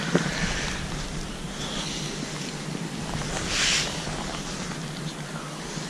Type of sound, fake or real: real